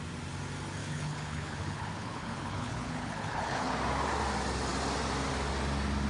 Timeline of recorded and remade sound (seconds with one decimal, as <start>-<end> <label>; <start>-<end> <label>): 0.0-0.8 recorded; 0.8-3.7 remade; 3.7-6.1 recorded